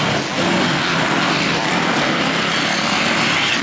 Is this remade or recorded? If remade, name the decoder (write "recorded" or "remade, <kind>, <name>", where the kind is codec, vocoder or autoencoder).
recorded